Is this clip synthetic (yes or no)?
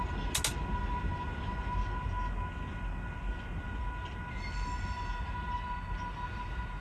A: no